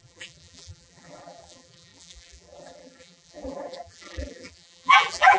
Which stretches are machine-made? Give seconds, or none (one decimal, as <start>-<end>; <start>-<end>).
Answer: 0.0-5.4